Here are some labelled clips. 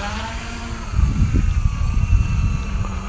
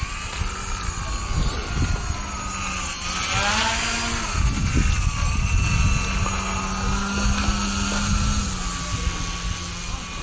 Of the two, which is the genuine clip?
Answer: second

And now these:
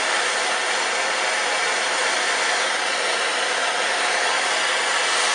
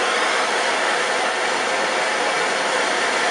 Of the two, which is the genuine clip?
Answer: first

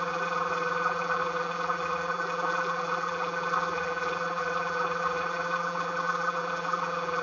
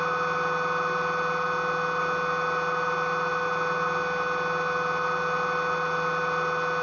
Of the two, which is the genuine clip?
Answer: second